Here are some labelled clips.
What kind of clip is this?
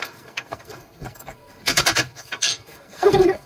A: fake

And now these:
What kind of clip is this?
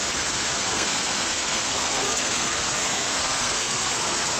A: fake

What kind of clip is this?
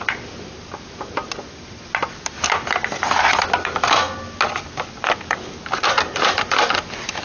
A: real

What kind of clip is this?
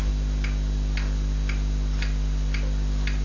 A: real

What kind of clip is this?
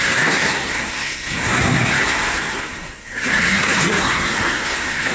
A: fake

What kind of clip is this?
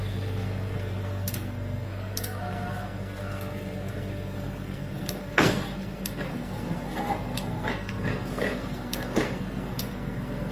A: fake